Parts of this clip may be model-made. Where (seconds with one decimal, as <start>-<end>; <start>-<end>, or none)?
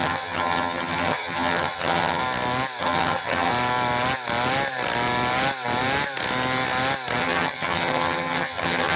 0.0-2.2; 2.8-3.5; 7.2-9.0